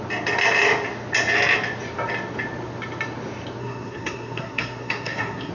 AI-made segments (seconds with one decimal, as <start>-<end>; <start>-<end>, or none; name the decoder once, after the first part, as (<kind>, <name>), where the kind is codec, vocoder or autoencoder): 3.6-5.5 (codec, SNAC)